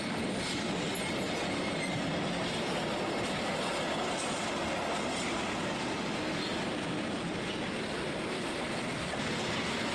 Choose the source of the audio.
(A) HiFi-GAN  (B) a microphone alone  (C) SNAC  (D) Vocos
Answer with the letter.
B